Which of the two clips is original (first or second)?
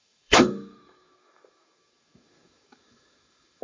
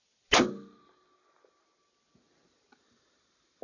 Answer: second